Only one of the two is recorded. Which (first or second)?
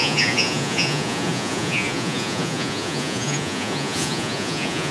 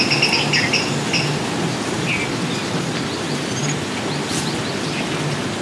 second